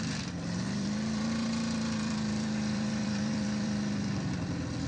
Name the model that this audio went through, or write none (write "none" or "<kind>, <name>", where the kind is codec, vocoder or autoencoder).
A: vocoder, BigVGAN v2